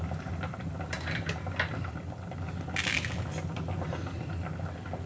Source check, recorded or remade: recorded